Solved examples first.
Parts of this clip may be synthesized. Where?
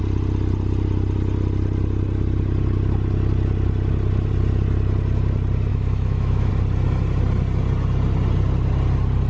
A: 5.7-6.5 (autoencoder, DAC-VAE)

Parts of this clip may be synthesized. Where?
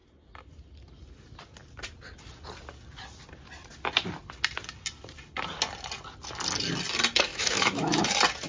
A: 7.3-8.1 (autoencoder, DAC-VAE)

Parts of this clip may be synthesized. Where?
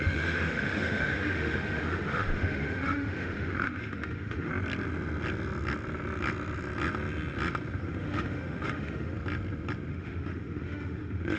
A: 0.0-4.5 (autoencoder, DAC-VAE); 7.8-9.1; 9.9-11.4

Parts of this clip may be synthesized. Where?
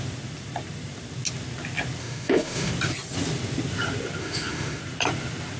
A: 2.0-2.7 (autoencoder, DAC-VAE); 4.2-4.8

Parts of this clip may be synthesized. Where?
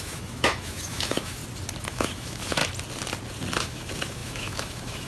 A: 0.0-1.4 (autoencoder, DAC-VAE); 1.9-2.6; 3.6-5.1